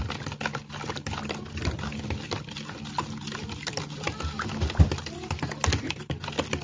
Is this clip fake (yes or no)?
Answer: no